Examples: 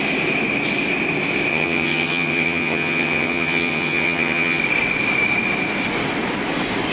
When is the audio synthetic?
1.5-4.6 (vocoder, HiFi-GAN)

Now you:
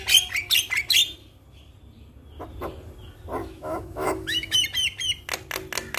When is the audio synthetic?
3.4-4.6 (autoencoder, DAC-VAE)

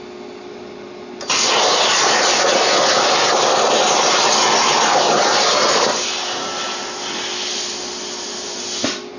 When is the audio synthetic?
none

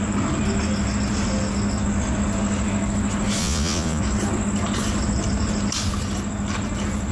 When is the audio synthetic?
3.4-4.0 (vocoder, Vocos)

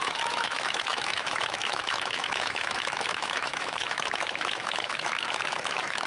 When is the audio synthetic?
0.0-6.1 (autoencoder, DAC-VAE)

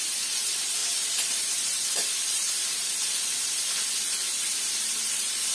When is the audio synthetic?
0.0-2.6 (vocoder, BigVGAN v2); 4.7-5.5

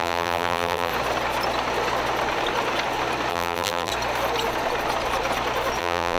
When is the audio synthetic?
0.0-0.9 (vocoder, BigVGAN v2); 3.3-3.9; 5.8-6.2